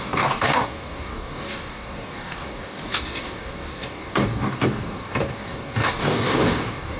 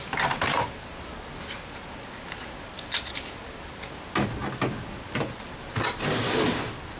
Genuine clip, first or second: second